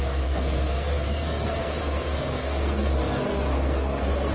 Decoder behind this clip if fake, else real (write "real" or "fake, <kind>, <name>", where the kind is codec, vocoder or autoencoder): fake, codec, SNAC